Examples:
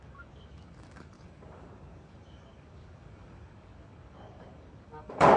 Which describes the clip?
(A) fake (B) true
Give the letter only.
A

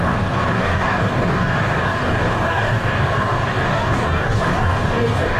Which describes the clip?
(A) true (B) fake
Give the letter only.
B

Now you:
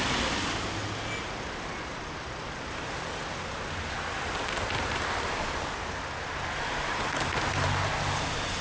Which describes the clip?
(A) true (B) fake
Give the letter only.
A